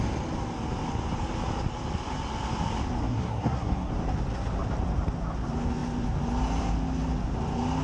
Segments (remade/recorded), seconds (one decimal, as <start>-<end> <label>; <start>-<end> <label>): 0.0-3.0 recorded; 3.0-3.9 remade; 3.9-7.8 recorded